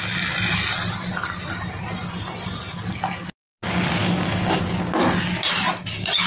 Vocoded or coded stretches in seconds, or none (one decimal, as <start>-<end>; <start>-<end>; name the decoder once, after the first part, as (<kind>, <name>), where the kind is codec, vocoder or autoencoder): 4.0-4.6 (codec, DAC)